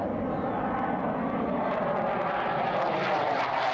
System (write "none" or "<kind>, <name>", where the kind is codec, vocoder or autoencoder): none